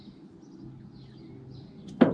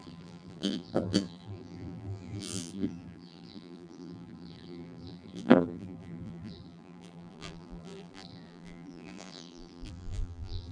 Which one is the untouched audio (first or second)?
first